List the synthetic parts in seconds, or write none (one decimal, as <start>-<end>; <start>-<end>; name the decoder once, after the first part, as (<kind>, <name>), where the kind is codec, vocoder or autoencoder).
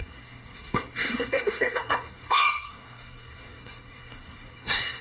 0.0-5.0 (codec, SNAC)